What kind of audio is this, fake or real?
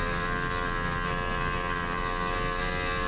real